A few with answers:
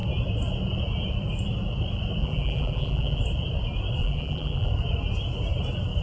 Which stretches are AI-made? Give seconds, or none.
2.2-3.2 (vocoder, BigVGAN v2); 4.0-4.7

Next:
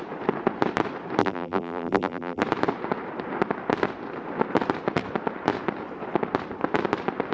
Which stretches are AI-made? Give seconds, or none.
1.2-2.4 (vocoder, BigVGAN v2)

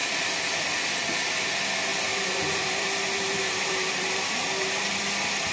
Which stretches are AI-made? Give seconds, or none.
1.9-5.0 (vocoder, BigVGAN v2)

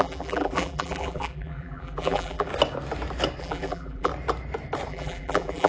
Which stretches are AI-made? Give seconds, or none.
0.0-2.5 (vocoder, BigVGAN v2); 3.4-4.1; 4.9-5.7